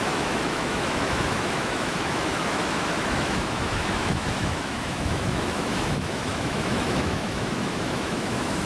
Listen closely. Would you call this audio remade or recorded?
remade